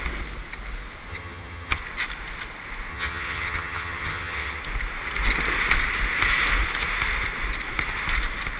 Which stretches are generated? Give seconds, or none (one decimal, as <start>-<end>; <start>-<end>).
1.1-1.8; 2.9-4.6